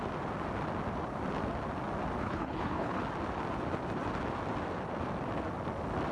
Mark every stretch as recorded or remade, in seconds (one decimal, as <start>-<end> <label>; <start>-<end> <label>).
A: 0.0-2.2 recorded; 2.2-3.0 remade; 3.0-6.1 recorded